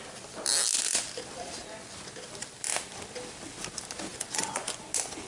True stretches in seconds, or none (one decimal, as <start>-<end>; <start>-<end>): 0.0-4.1; 4.8-5.3